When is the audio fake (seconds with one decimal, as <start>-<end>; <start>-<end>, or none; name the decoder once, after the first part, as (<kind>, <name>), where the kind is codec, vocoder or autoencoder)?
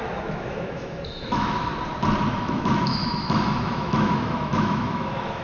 0.0-1.7 (autoencoder, DAC-VAE); 2.3-5.4